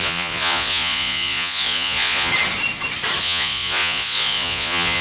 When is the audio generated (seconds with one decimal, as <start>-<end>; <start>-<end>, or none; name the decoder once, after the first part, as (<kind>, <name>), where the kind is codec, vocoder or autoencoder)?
0.0-2.3 (vocoder, Vocos); 3.2-5.0